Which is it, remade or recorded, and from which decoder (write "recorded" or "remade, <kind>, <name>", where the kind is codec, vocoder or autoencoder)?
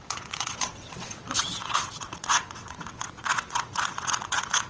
remade, vocoder, WaveNeXt